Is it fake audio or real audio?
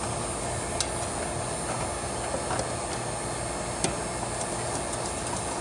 real